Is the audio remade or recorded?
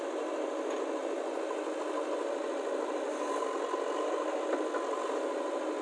recorded